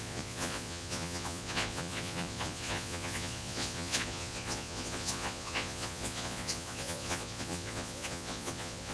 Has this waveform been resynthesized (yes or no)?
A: yes